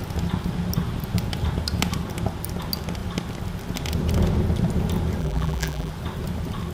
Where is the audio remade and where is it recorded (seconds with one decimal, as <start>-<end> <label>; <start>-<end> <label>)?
0.0-5.2 recorded; 5.2-5.9 remade; 5.9-6.7 recorded